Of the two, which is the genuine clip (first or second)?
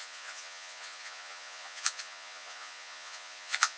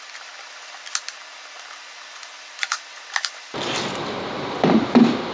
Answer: second